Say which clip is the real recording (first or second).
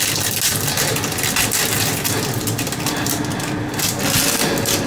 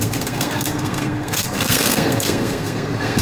first